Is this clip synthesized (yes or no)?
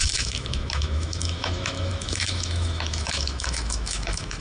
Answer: yes